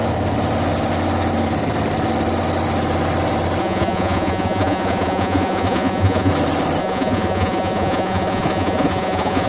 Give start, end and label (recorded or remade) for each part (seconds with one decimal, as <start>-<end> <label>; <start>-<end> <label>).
0.0-3.6 recorded; 3.6-6.3 remade; 6.3-6.8 recorded; 6.8-9.5 remade